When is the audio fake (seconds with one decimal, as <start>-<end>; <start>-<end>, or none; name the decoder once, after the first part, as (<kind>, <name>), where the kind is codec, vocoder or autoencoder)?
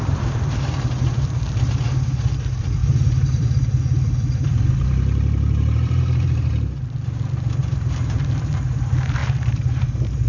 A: 0.0-10.3 (vocoder, BigVGAN v2)